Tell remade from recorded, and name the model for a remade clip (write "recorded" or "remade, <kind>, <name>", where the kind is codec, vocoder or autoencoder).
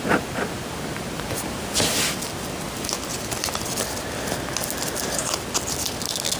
recorded